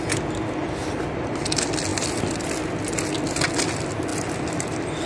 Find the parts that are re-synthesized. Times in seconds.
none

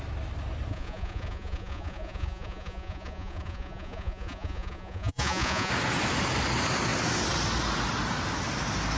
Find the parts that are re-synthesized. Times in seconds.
0.7-5.7

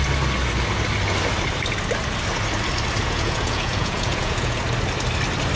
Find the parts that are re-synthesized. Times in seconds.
3.0-4.6

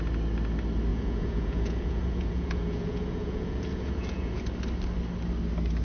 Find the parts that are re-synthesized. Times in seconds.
0.9-4.4

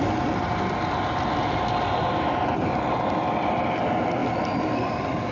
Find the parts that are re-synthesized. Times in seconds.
none

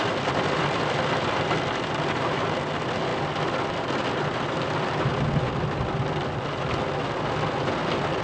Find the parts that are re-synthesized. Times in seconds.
none